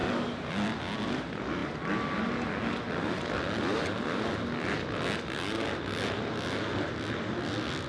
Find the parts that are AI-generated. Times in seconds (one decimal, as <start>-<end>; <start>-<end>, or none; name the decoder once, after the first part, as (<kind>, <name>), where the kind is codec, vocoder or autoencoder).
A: none